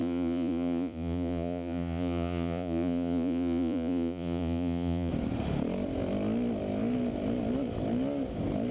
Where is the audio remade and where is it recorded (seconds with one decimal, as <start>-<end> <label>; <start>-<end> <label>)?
0.0-5.1 remade; 5.1-8.7 recorded